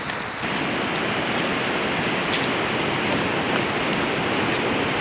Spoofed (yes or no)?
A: no